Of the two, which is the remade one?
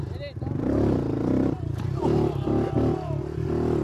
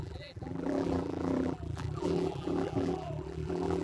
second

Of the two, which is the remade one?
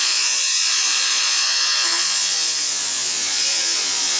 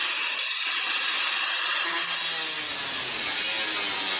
first